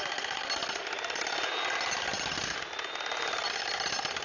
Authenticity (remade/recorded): recorded